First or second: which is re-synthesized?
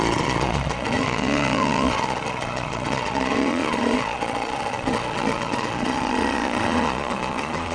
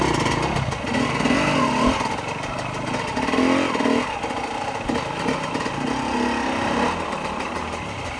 first